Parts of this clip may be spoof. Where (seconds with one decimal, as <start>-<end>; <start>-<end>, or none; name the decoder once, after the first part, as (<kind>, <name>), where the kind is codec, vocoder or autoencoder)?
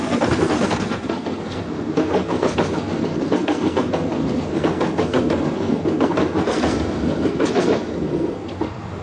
0.0-9.0 (codec, SNAC)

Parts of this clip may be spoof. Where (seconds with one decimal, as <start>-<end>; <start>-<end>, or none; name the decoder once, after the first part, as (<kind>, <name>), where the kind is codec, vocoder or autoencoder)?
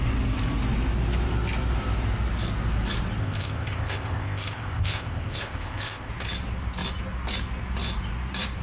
3.2-6.1 (codec, ZipCodec)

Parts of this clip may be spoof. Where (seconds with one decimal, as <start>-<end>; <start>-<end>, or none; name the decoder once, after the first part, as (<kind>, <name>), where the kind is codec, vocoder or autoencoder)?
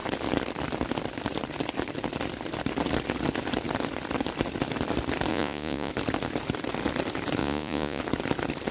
5.3-5.9 (vocoder, Vocos); 7.4-8.0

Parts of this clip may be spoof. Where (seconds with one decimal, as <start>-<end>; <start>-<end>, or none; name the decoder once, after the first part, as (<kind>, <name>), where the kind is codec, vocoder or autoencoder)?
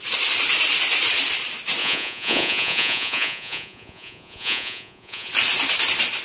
1.8-5.3 (vocoder, Vocos)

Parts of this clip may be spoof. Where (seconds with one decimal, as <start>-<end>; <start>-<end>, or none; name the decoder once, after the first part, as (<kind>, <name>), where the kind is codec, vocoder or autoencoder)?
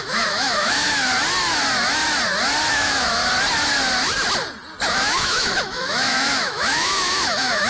0.0-1.1 (autoencoder, DAC-VAE); 2.7-3.2; 4.9-7.7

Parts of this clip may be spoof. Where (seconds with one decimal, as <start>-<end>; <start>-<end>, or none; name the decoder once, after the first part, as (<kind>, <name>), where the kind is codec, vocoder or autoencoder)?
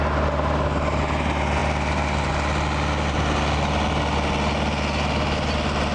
none